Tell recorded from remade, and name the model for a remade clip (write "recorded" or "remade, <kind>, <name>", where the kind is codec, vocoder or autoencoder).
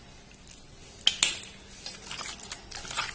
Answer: recorded